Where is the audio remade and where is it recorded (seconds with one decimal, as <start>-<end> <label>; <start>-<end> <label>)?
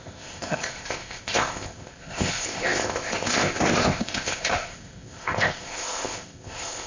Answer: 0.0-6.9 remade